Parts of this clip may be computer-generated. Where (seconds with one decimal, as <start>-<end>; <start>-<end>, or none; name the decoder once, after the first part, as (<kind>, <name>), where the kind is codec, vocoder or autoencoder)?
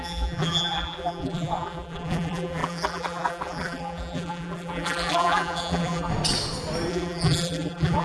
0.0-6.1 (vocoder, BigVGAN v2); 6.9-8.0